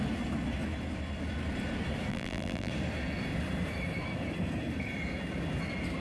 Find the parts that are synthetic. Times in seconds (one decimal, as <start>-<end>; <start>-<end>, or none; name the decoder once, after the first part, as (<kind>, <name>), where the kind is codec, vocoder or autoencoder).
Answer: 2.1-2.7 (vocoder, BigVGAN v2)